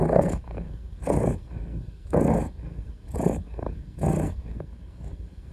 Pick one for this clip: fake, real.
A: fake